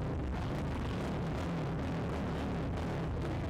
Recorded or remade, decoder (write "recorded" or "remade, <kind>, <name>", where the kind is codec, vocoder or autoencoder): recorded